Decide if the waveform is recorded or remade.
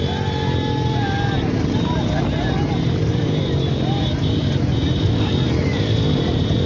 recorded